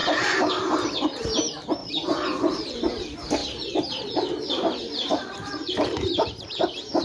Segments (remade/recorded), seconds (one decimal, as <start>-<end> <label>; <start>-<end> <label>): 0.0-1.8 remade; 1.8-2.5 recorded; 2.5-7.0 remade